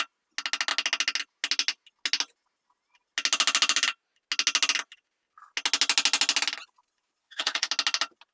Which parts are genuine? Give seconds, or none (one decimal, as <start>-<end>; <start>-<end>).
0.0-7.2; 7.7-8.3